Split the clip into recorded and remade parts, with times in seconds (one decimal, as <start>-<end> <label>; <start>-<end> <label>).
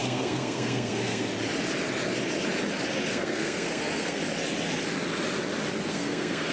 0.0-1.3 remade; 1.3-3.1 recorded; 3.1-4.2 remade; 4.2-5.9 recorded; 5.9-6.5 remade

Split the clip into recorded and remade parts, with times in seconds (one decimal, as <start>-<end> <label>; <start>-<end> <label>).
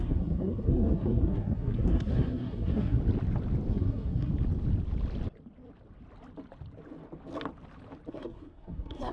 0.0-3.0 remade; 3.0-3.7 recorded; 3.7-4.3 remade; 4.3-8.1 recorded; 8.1-9.1 remade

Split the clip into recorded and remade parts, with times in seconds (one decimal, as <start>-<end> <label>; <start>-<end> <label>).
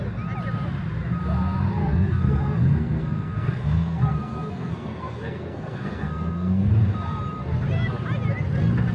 0.0-1.8 recorded; 1.8-6.7 remade; 6.7-8.9 recorded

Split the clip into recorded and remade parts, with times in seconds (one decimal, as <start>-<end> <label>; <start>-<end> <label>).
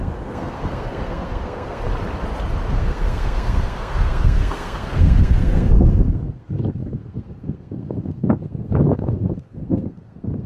0.0-1.9 remade; 1.9-2.7 recorded; 2.7-10.5 remade